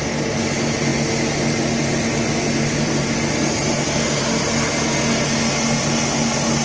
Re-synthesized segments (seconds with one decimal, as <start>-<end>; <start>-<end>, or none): none